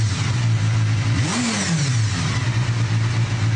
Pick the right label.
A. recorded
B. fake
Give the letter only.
A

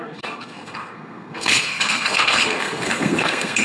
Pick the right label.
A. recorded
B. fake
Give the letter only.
B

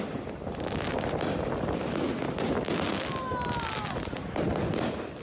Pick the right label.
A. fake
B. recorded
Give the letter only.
B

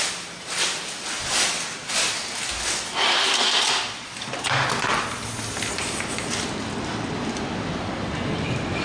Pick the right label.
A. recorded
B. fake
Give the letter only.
A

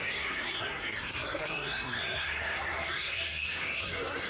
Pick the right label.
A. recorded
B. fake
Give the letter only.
B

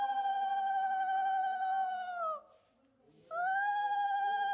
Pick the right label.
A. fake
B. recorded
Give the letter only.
B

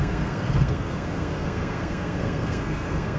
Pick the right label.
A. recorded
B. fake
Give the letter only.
B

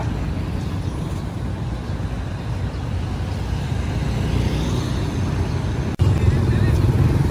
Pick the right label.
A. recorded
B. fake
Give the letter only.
A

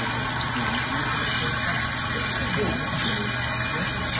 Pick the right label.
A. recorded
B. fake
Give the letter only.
A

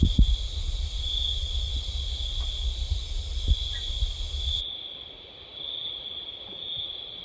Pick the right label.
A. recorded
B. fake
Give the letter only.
A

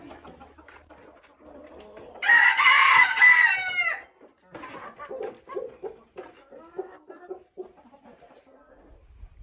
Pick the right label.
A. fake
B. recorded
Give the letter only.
B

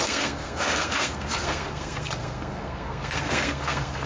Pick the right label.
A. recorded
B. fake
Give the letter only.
B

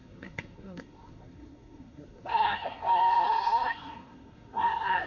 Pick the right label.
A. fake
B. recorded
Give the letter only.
A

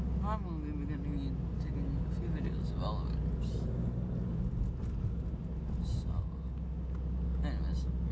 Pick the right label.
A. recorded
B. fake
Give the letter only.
A